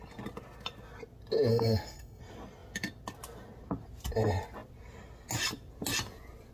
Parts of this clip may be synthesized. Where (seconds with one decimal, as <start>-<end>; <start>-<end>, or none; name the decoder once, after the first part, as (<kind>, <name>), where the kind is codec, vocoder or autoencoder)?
1.5-2.2 (codec, SNAC)